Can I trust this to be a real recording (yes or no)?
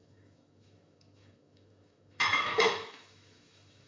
no